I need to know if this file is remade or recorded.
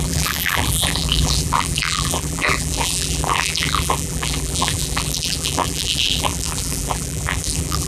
remade